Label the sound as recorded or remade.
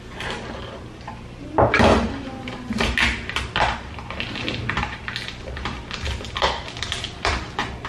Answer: recorded